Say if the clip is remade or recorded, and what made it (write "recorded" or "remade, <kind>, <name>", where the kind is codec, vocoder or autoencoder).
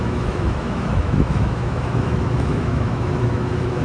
remade, autoencoder, DAC-VAE